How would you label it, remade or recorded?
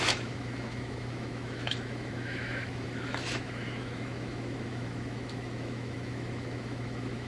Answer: remade